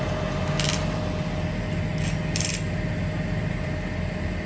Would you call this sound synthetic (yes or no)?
no